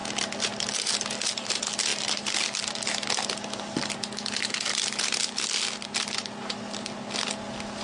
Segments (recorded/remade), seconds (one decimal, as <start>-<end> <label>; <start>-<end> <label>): 0.0-7.8 recorded